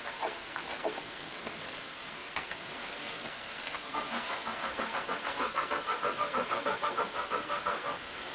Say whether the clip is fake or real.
fake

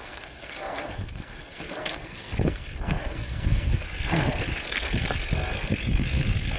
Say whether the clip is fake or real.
fake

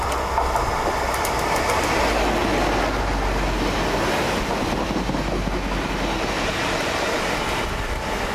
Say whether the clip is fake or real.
real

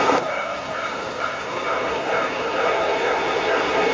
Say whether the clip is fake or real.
fake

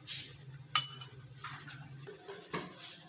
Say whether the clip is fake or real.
real